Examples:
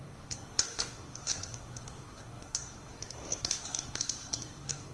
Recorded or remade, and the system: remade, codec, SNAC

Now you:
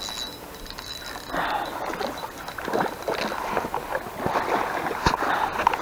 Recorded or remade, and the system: recorded